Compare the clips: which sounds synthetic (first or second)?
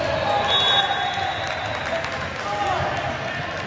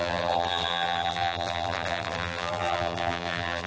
second